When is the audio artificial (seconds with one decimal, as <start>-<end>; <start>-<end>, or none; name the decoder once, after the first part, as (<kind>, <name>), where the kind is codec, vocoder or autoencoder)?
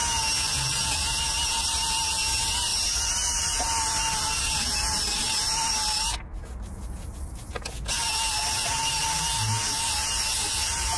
2.7-4.4 (vocoder, BigVGAN v2)